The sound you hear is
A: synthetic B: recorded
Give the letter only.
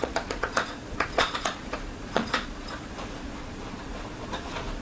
A